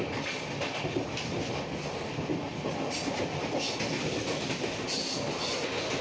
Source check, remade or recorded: recorded